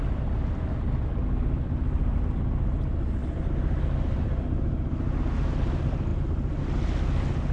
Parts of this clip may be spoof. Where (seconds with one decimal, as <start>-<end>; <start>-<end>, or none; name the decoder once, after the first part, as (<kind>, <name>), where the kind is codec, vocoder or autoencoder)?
none